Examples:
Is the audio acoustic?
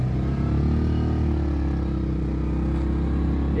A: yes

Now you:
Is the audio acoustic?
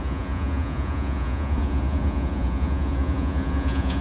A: no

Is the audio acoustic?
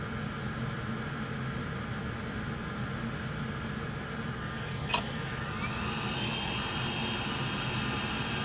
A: yes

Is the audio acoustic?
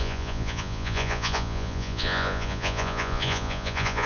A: no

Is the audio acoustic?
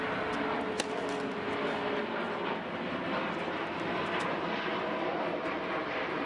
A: yes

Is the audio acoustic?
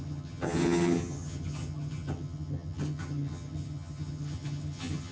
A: no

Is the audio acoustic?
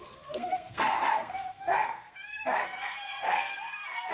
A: no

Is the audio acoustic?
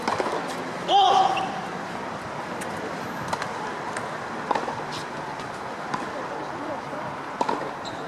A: yes